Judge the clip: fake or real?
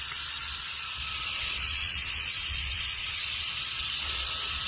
fake